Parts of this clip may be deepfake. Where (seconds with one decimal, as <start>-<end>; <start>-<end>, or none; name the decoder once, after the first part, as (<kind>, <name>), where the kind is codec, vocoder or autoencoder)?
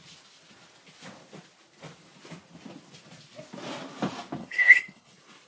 4.4-5.1 (codec, HILCodec)